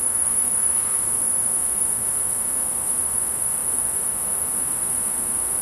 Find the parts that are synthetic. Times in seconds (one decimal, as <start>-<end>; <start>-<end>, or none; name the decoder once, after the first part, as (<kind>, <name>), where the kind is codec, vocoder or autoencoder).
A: 0.0-5.6 (autoencoder, DAC-VAE)